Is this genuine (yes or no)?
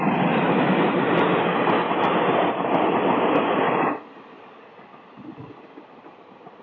yes